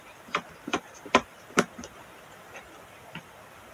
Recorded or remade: recorded